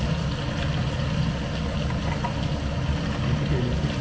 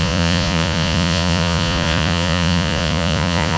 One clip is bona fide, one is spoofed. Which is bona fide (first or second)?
first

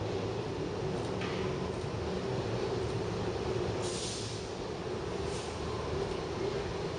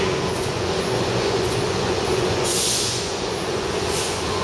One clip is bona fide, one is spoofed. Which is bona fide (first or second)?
first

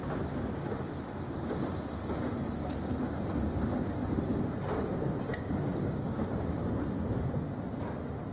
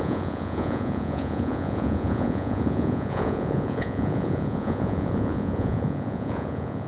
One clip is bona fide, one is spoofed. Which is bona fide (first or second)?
first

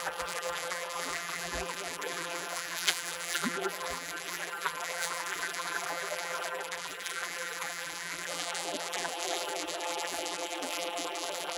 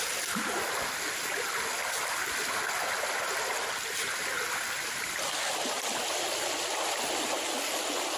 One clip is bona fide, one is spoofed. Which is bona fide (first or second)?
second